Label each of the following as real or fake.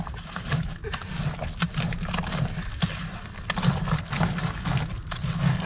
real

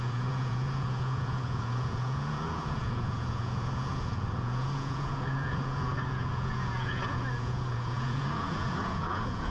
fake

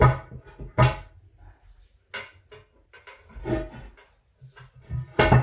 real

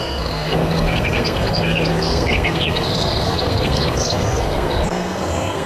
fake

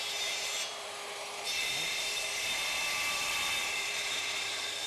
fake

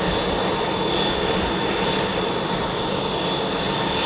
real